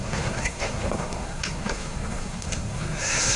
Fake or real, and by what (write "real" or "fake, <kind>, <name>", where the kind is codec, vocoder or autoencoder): fake, codec, SNAC